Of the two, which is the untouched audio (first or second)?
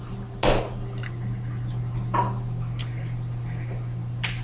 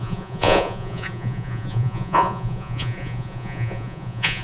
first